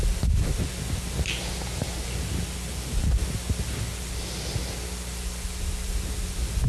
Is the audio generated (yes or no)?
no